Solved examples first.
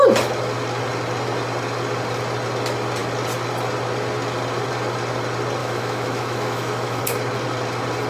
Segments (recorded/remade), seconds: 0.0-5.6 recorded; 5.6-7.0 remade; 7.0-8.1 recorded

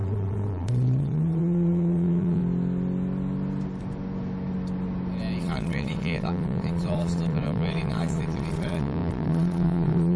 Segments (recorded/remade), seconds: 0.0-2.4 remade; 2.4-5.4 recorded; 5.4-10.2 remade

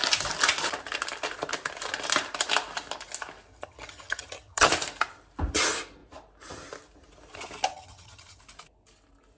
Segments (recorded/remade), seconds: 0.0-3.5 recorded; 3.5-4.7 remade; 4.7-7.7 recorded; 7.7-8.4 remade; 8.4-9.4 recorded

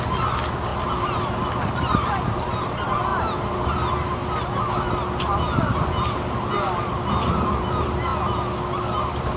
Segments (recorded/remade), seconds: 0.0-9.4 recorded

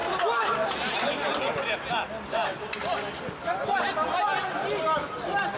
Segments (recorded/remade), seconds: 0.0-5.6 recorded